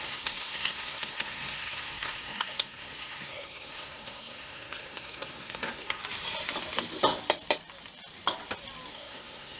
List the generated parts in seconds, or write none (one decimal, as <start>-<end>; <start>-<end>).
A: 0.0-6.0; 8.9-9.6